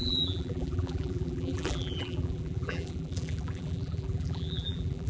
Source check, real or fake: fake